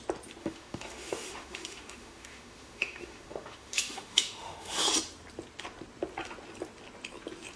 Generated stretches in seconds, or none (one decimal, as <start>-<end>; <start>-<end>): 0.4-4.9